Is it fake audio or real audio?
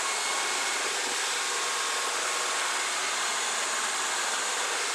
real